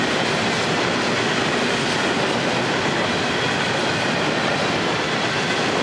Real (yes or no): yes